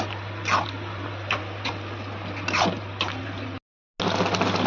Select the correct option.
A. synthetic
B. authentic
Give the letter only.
B